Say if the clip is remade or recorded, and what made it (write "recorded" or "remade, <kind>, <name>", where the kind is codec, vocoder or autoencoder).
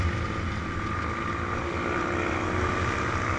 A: recorded